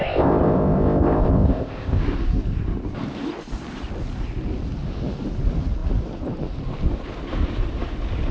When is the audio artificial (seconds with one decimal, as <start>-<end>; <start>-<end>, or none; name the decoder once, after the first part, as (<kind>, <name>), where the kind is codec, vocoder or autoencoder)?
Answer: 0.0-2.0 (codec, ZipCodec)